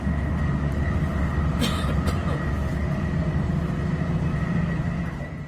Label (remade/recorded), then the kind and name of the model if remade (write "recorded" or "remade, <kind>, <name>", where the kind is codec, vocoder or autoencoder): recorded